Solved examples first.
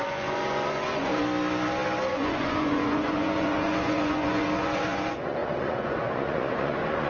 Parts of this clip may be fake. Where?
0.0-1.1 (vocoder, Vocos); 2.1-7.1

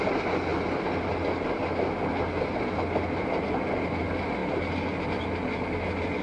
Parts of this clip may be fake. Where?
none

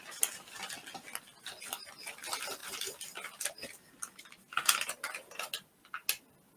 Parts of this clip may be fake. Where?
none

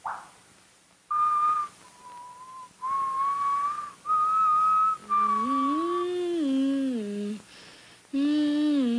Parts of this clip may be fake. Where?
none